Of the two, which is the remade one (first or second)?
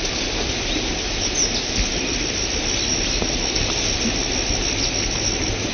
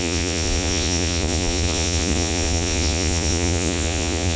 second